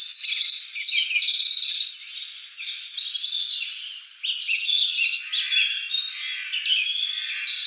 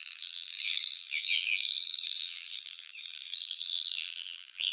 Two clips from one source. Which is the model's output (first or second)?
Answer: second